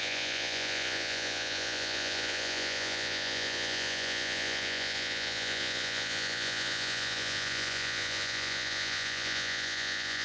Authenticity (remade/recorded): remade